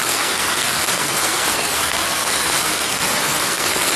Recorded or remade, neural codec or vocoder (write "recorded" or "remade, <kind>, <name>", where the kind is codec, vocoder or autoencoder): remade, codec, SNAC